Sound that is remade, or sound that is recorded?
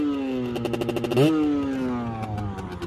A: recorded